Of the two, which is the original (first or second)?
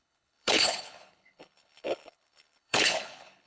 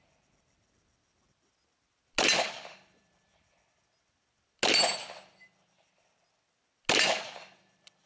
second